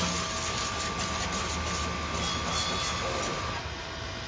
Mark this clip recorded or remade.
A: recorded